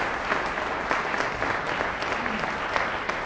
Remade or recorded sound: recorded